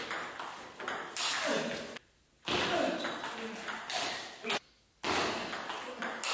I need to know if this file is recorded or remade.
recorded